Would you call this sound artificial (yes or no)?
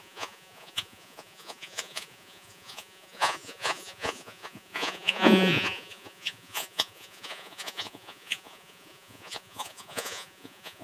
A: yes